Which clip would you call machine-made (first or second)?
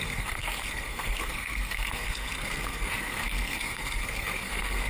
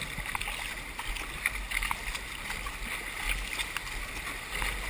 first